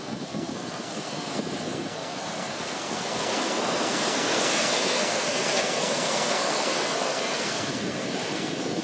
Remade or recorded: remade